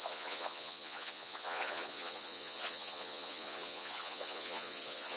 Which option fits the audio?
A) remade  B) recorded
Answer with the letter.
A